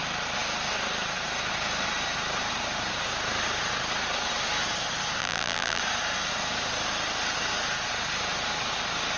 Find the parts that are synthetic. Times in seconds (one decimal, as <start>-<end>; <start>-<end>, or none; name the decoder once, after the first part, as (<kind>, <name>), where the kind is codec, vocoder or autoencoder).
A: 5.2-5.8 (vocoder, BigVGAN v2)